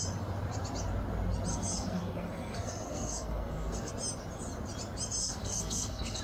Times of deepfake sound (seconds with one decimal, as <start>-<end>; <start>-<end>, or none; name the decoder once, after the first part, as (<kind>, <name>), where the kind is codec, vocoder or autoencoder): 1.5-3.9 (codec, SNAC); 5.2-6.2